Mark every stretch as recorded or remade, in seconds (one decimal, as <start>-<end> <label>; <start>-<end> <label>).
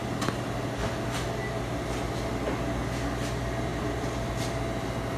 0.0-3.7 recorded; 3.7-4.3 remade; 4.3-5.2 recorded